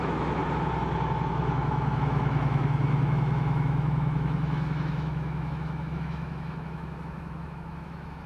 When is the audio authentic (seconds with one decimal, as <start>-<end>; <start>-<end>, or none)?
0.4-1.3